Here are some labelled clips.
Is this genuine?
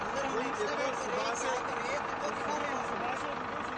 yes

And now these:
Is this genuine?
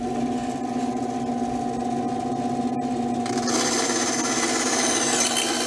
yes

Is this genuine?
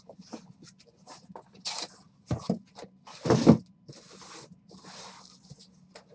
yes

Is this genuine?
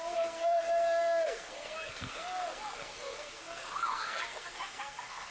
no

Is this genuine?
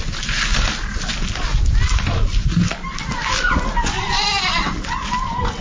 yes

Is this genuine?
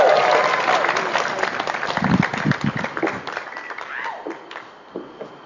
yes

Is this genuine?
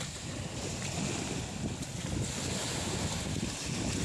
yes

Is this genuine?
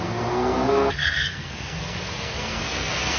no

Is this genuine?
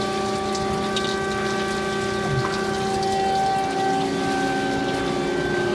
yes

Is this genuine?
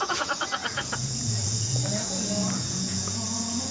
no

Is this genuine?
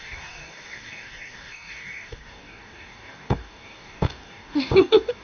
no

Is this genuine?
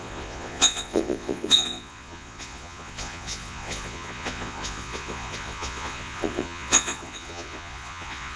no